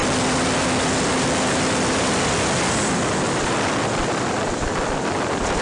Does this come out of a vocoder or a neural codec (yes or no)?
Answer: yes